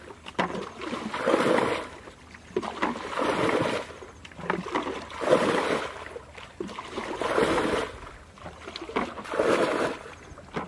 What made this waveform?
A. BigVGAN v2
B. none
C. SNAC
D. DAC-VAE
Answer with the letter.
B